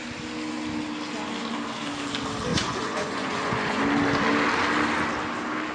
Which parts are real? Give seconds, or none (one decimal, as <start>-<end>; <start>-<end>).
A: 0.0-2.5; 3.8-5.7